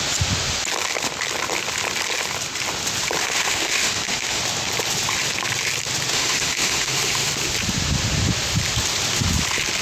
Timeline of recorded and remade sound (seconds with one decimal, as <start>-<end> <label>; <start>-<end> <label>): 0.0-3.2 recorded; 3.2-4.4 remade; 4.4-6.1 recorded; 6.1-7.3 remade; 7.3-9.8 recorded